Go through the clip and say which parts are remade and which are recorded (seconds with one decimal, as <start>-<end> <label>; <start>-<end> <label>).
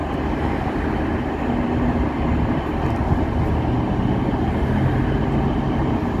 0.0-6.2 recorded